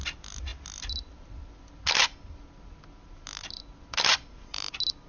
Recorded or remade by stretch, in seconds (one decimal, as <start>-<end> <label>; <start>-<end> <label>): 0.0-5.1 recorded